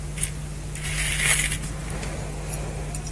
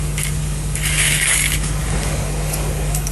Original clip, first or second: first